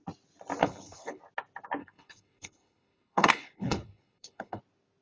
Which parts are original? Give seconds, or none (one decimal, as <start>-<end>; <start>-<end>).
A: 0.0-0.6; 1.2-1.8; 4.6-5.0